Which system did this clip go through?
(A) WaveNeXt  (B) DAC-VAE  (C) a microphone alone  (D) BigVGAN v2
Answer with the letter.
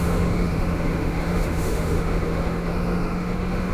B